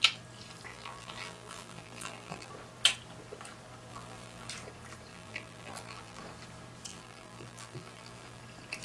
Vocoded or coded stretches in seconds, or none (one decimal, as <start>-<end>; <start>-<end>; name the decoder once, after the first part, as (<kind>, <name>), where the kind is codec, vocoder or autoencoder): 0.7-2.5 (vocoder, BigVGAN v2); 3.9-4.5; 5.1-6.2; 6.9-8.4